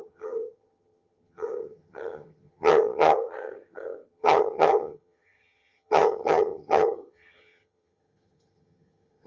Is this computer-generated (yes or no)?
yes